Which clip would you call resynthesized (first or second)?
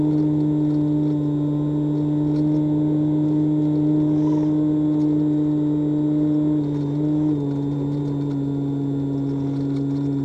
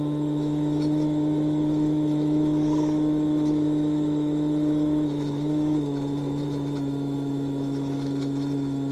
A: second